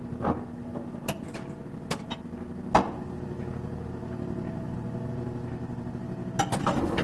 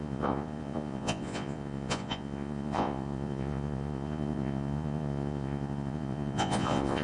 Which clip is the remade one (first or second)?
second